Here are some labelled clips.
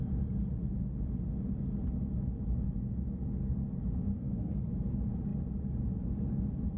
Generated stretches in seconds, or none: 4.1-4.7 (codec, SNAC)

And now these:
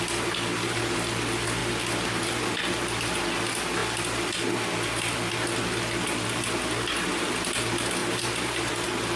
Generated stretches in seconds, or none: 8.0-8.7 (vocoder, BigVGAN v2)

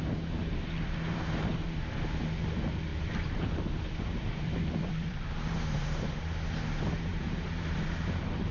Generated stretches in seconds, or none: 0.4-2.2 (vocoder, BigVGAN v2); 2.9-6.3; 7.1-8.5